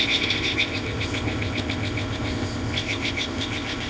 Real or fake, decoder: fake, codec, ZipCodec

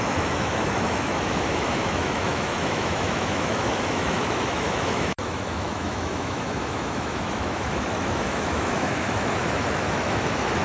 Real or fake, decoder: fake, autoencoder, DAC-VAE